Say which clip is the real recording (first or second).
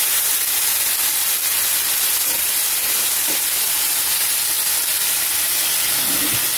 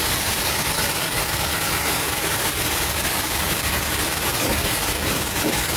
first